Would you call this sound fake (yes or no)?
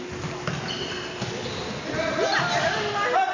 no